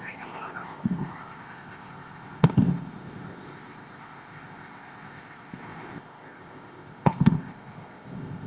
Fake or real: fake